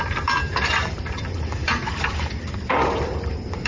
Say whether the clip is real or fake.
fake